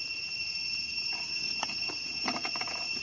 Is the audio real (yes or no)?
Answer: no